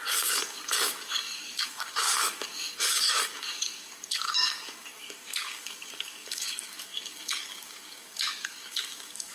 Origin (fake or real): fake